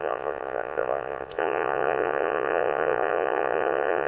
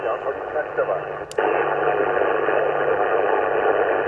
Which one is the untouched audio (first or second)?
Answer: second